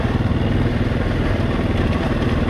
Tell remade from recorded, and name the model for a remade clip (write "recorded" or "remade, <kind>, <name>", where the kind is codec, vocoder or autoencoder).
recorded